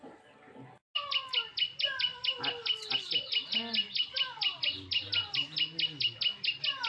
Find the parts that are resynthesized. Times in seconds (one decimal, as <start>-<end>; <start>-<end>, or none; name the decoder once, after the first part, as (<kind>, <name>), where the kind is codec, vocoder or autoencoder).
none

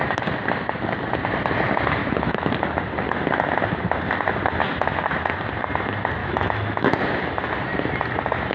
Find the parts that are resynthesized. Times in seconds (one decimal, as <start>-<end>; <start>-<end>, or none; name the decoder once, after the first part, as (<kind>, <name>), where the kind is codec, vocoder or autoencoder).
2.0-2.5 (autoencoder, DAC-VAE); 6.2-7.0

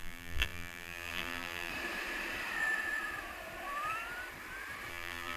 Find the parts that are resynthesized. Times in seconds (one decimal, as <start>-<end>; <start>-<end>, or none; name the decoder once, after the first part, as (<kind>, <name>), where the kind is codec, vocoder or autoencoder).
0.0-1.7 (vocoder, BigVGAN v2); 4.9-5.4